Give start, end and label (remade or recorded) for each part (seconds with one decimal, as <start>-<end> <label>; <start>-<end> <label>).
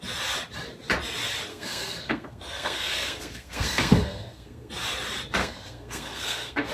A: 0.0-1.5 recorded; 1.5-4.7 remade; 4.7-5.4 recorded; 5.4-6.7 remade